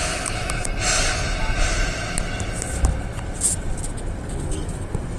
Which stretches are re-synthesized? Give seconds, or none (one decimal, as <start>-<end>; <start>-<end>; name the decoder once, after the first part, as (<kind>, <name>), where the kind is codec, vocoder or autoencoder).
0.0-0.5 (autoencoder, DAC-VAE)